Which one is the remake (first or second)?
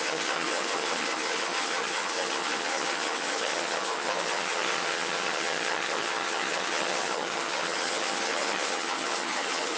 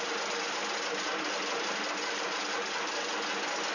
first